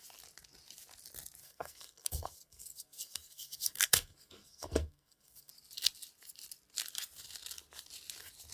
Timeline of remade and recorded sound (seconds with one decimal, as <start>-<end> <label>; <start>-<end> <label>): 0.0-1.4 recorded; 1.4-5.5 remade; 5.5-8.5 recorded

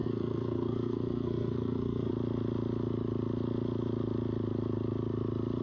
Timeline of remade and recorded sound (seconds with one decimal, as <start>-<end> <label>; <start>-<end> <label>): 0.0-2.1 remade; 2.1-5.6 recorded

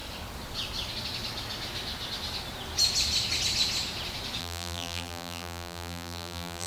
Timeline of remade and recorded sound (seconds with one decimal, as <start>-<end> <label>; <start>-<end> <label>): 0.0-4.4 recorded; 4.4-6.7 remade

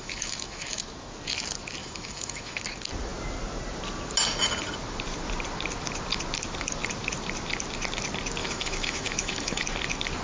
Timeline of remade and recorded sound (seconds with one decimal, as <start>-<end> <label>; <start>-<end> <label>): 0.0-0.8 remade; 0.8-1.8 recorded; 1.8-2.6 remade; 2.6-8.4 recorded; 8.4-9.6 remade; 9.6-10.2 recorded

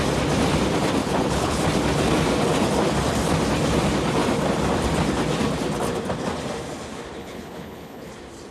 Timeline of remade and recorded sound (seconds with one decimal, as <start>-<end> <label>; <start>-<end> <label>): 0.0-1.0 recorded; 1.0-1.6 remade; 1.6-7.2 recorded; 7.2-8.1 remade; 8.1-8.5 recorded

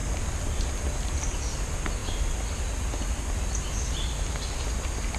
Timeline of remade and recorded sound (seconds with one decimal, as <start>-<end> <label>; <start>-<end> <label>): 0.0-5.2 recorded

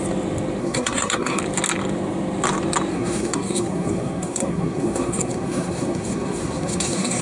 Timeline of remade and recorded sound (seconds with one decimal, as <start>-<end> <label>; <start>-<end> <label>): 0.0-0.6 recorded; 0.6-1.4 remade; 1.4-2.9 recorded; 2.9-7.2 remade